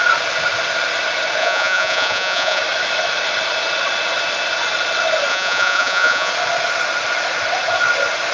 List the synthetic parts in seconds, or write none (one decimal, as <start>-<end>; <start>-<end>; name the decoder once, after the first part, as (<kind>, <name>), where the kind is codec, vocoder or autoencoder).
1.4-2.6 (vocoder, Vocos); 5.3-6.3